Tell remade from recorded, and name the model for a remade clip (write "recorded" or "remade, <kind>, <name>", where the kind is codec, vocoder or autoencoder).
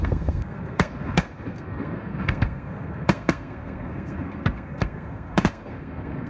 remade, codec, SNAC